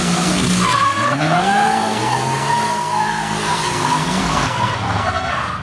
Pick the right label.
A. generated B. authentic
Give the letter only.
A